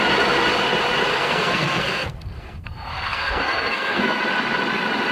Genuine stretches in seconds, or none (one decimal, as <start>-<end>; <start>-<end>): 0.0-1.1; 4.2-5.1